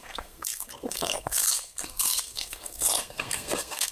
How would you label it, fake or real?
fake